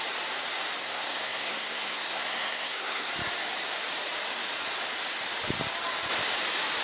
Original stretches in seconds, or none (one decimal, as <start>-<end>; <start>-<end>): 0.0-0.8; 3.1-6.8